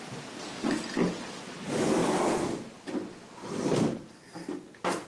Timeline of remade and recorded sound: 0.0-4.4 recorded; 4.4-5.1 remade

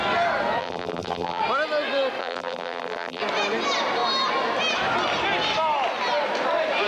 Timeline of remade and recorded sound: 0.0-0.6 recorded; 0.6-1.4 remade; 1.4-2.2 recorded; 2.2-3.2 remade; 3.2-6.9 recorded

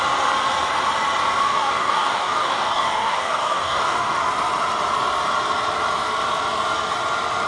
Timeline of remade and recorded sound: 0.0-1.4 recorded; 1.4-4.2 remade; 4.2-7.5 recorded

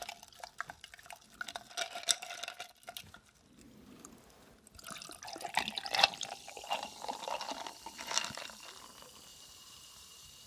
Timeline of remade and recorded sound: 0.0-9.3 recorded; 9.3-10.5 remade

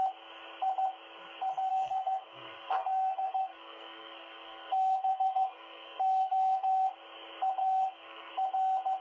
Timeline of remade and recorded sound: 0.0-1.7 recorded; 1.7-6.9 remade; 6.9-7.6 recorded; 7.6-8.3 remade; 8.3-9.0 recorded